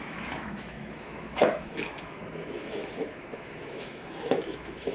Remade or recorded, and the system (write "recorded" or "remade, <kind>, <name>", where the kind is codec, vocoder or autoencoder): remade, autoencoder, DAC-VAE